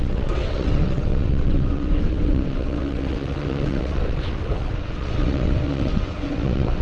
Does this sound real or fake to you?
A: fake